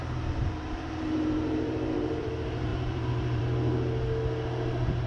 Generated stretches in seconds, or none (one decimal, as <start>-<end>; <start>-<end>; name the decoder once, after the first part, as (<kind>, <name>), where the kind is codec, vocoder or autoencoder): 0.0-2.3 (vocoder, BigVGAN v2); 2.7-3.4